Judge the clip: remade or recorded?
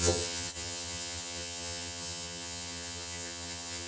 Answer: remade